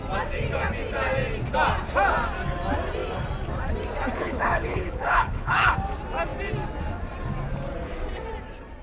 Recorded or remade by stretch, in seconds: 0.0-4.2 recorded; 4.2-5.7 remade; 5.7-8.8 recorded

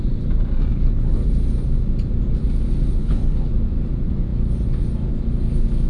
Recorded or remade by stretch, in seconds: 0.0-0.7 recorded; 0.7-1.3 remade; 1.3-3.0 recorded; 3.0-3.5 remade; 3.5-5.9 recorded

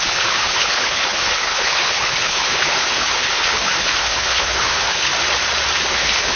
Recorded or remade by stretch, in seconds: 0.0-5.1 remade; 5.1-5.9 recorded; 5.9-6.4 remade

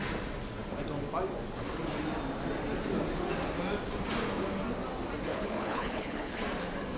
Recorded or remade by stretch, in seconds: 0.0-5.3 recorded; 5.3-6.4 remade; 6.4-7.0 recorded

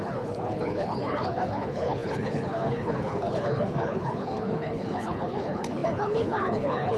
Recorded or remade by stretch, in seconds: 0.0-7.0 remade

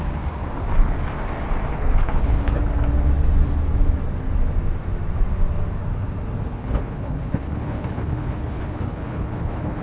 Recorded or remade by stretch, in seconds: 0.0-1.7 recorded; 1.7-2.6 remade; 2.6-6.5 recorded; 6.5-9.8 remade

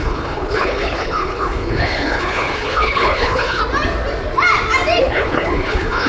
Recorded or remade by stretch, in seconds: 0.0-3.6 remade; 3.6-5.0 recorded; 5.0-6.1 remade